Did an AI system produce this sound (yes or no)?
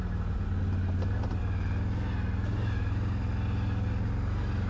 no